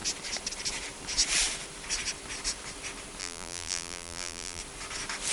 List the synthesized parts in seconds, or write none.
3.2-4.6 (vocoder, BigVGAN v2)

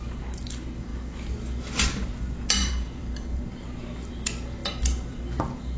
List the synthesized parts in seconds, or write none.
3.0-4.1 (vocoder, BigVGAN v2)

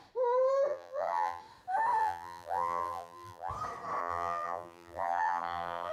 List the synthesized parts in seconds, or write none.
0.7-1.4 (vocoder, BigVGAN v2); 2.0-3.5; 4.0-5.9

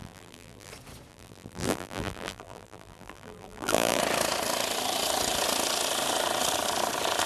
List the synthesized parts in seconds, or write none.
0.0-0.7 (vocoder, BigVGAN v2); 1.1-4.0